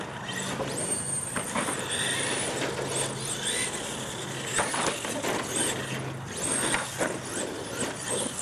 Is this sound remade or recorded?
recorded